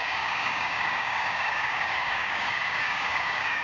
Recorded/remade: remade